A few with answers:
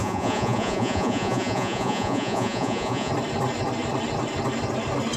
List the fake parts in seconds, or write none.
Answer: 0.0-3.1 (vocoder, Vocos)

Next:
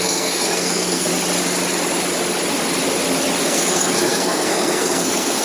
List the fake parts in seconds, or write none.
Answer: 0.0-1.1 (codec, SNAC); 3.4-5.4

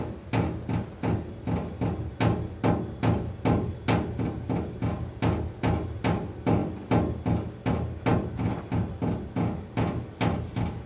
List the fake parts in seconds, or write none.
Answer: none

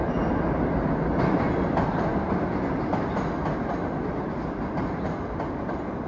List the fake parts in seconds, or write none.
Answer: none

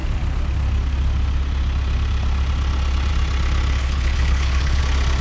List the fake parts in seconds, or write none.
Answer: 3.8-4.8 (codec, HILCodec)